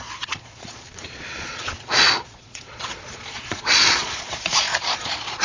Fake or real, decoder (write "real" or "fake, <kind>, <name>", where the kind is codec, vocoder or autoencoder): fake, vocoder, Vocos